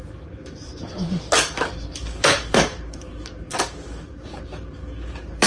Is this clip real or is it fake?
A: fake